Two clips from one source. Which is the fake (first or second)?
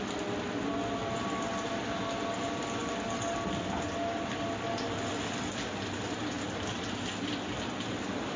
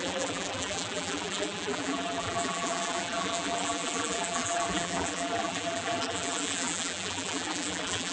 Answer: second